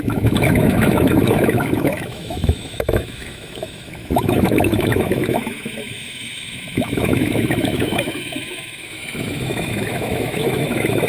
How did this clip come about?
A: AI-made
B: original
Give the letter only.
A